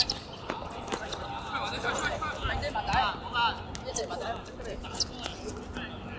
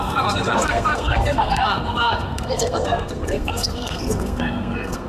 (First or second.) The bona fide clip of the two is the first